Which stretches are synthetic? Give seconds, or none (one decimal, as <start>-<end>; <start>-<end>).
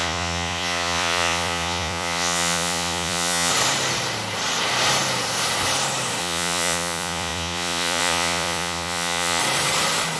0.0-3.5; 6.2-9.4